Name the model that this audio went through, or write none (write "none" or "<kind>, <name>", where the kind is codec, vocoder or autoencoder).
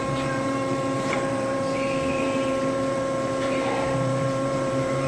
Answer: vocoder, BigVGAN v2